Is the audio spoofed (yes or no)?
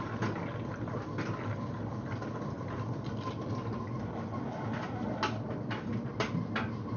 no